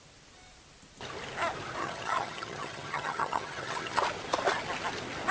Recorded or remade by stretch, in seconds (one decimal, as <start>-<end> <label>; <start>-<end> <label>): 0.0-1.8 recorded; 1.8-4.0 remade; 4.0-5.3 recorded